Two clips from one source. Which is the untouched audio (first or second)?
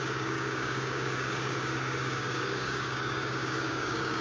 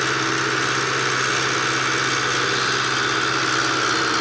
second